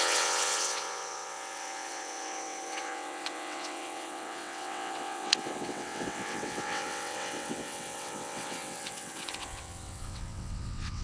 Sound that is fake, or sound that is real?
fake